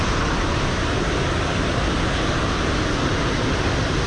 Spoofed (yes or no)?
no